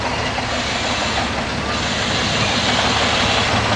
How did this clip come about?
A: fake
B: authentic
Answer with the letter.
B